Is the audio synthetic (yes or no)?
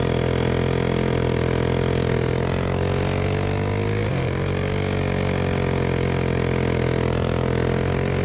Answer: no